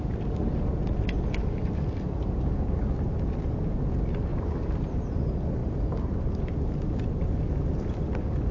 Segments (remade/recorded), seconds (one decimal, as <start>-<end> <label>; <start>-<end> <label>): 0.0-4.3 recorded; 4.3-5.1 remade; 5.1-8.5 recorded